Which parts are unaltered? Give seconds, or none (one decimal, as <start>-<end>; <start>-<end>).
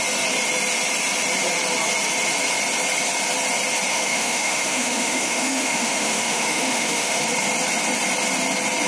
0.0-3.9; 7.2-8.9